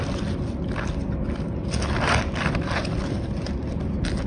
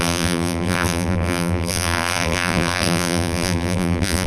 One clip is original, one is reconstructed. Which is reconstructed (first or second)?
second